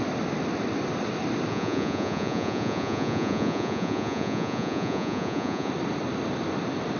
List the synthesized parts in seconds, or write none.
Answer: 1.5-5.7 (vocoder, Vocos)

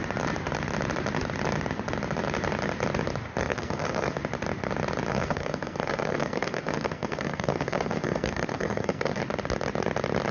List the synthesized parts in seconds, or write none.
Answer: 3.4-4.2 (codec, SNAC); 5.1-9.2

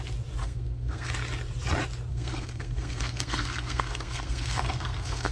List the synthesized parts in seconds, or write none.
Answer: 0.4-1.1 (codec, SNAC); 2.1-5.3

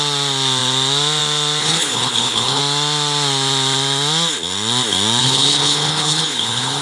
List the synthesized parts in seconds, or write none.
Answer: 1.6-2.6 (codec, HILCodec); 5.2-6.8

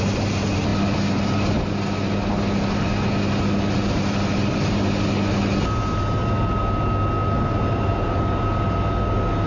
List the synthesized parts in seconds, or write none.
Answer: none

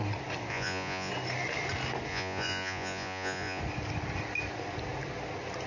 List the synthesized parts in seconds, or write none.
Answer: 0.5-1.1 (vocoder, Vocos); 2.1-3.6